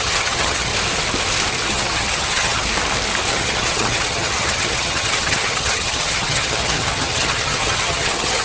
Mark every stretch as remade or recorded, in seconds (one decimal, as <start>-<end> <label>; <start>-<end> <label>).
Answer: 0.0-0.7 remade; 0.7-1.7 recorded; 1.7-2.6 remade; 2.6-3.3 recorded; 3.3-8.4 remade